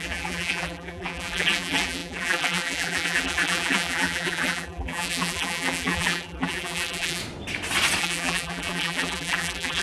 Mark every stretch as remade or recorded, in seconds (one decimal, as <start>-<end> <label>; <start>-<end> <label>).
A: 0.0-7.2 remade; 7.2-8.0 recorded; 8.0-9.8 remade